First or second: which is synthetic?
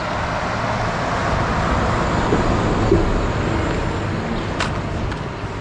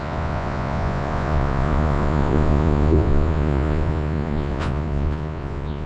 second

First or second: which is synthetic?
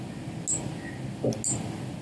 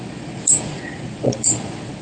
second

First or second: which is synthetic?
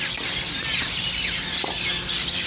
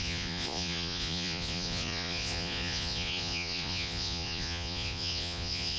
second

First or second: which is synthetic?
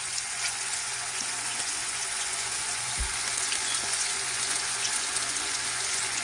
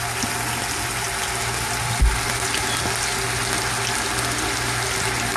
first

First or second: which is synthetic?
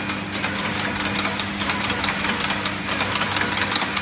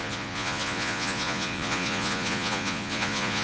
second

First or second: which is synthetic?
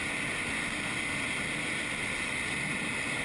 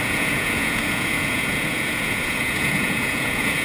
second